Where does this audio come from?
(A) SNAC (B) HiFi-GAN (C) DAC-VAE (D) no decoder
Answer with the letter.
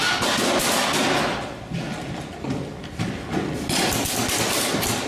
D